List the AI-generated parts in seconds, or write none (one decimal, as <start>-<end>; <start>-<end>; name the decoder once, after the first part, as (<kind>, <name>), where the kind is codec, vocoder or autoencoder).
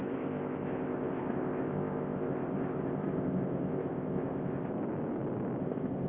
0.0-4.7 (codec, ZipCodec); 5.6-6.1